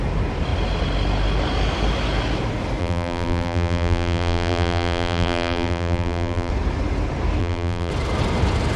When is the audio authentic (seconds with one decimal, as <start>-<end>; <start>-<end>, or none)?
0.0-2.8; 6.5-7.4; 7.9-8.8